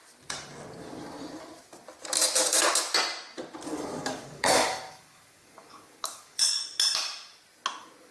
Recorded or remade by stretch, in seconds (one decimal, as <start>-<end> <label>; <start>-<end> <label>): 0.0-3.7 recorded; 3.7-6.6 remade; 6.6-8.1 recorded